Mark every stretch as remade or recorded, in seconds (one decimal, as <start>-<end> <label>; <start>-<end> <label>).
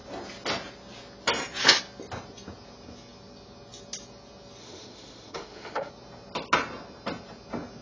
0.0-4.6 recorded; 4.6-5.9 remade; 5.9-7.8 recorded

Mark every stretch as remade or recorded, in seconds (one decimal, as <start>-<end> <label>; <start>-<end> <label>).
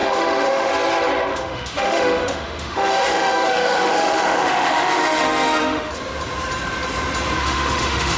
0.0-0.7 remade; 0.7-1.3 recorded; 1.3-5.9 remade; 5.9-7.4 recorded; 7.4-8.2 remade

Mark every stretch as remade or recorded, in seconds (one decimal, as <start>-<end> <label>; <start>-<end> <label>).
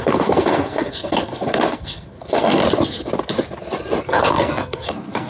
0.0-2.6 remade; 2.6-4.0 recorded; 4.0-5.3 remade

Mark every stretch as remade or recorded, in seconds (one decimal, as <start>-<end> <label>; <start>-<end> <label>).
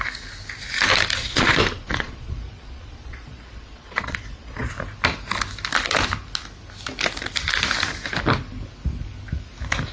0.0-1.2 recorded; 1.2-4.7 remade; 4.7-9.9 recorded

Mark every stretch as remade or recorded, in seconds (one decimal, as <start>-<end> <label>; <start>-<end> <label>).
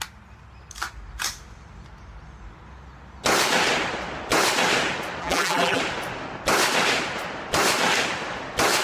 0.0-5.2 recorded; 5.2-5.8 remade; 5.8-8.8 recorded